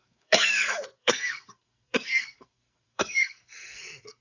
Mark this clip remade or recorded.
remade